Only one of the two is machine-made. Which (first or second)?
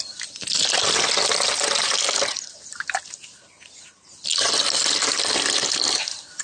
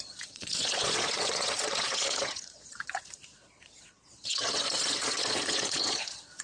second